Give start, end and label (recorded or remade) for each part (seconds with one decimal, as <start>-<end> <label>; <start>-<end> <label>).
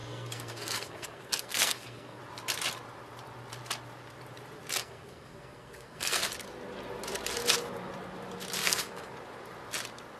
0.0-2.2 remade; 2.2-4.8 recorded; 4.8-6.3 remade; 6.3-8.6 recorded; 8.6-9.1 remade; 9.1-10.2 recorded